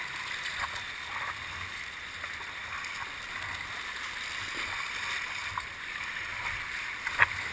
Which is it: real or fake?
real